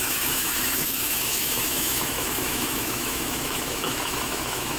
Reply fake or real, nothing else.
fake